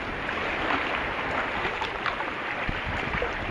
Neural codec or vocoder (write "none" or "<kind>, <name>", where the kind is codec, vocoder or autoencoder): none